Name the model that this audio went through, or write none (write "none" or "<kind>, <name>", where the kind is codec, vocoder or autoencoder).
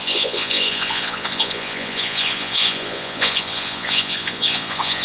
vocoder, Vocos